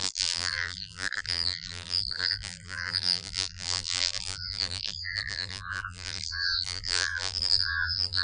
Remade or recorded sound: remade